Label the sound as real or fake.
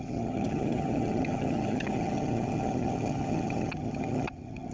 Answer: fake